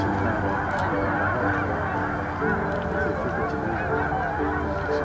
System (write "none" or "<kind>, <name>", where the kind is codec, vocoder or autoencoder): none